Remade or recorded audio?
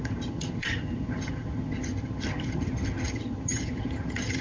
remade